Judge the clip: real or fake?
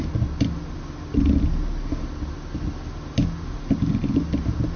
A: real